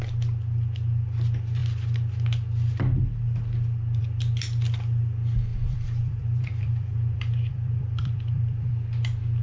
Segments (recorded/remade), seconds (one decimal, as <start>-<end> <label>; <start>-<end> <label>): 0.0-5.5 recorded; 5.5-8.7 remade; 8.7-9.4 recorded